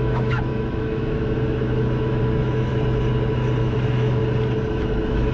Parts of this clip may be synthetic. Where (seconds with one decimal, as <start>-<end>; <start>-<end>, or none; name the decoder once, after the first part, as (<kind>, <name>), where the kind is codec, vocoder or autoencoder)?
0.0-2.7 (autoencoder, DAC-VAE); 3.6-4.2; 4.7-5.3